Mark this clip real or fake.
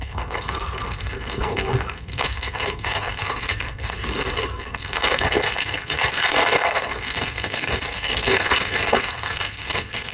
fake